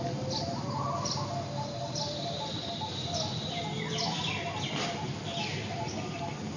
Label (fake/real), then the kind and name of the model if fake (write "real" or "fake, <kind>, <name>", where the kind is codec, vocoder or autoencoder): real